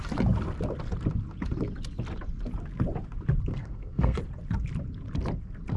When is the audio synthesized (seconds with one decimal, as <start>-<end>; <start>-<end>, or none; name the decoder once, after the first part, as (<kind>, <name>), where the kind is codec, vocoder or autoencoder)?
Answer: 3.5-4.2 (codec, SNAC)